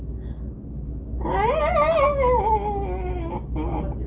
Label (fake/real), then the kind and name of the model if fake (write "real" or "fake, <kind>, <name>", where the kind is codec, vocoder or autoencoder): real